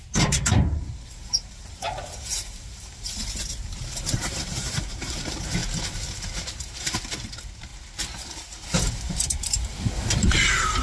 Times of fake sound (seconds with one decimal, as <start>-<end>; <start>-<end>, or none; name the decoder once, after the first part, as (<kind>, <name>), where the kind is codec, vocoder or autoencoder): 0.0-5.6 (vocoder, BigVGAN v2); 6.1-7.7; 8.9-10.8